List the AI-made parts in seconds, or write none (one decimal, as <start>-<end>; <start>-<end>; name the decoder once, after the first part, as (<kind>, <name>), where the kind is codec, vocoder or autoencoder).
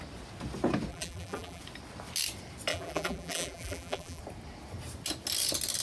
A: 0.9-1.6 (vocoder, BigVGAN v2); 2.7-4.2